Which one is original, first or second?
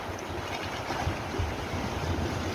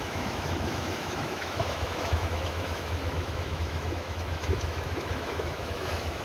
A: first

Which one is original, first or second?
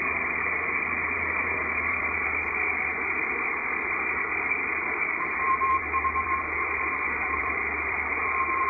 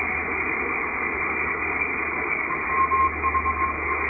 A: second